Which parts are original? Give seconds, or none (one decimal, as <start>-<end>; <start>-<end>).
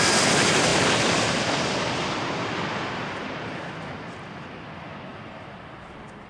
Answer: 0.0-5.1